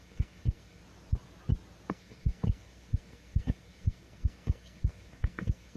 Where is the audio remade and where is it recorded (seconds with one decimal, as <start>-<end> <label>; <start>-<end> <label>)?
0.0-0.8 remade; 0.8-1.9 recorded; 1.9-5.8 remade